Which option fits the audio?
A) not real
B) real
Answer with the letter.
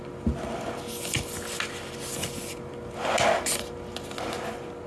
B